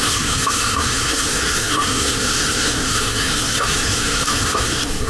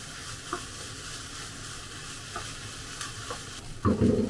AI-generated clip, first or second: first